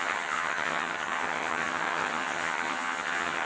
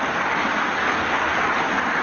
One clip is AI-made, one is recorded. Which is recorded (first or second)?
second